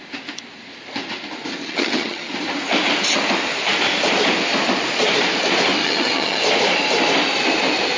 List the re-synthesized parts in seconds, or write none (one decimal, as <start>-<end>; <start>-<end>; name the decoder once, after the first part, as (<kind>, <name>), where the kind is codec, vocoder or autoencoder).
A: 1.6-2.3 (vocoder, HiFi-GAN); 5.8-6.4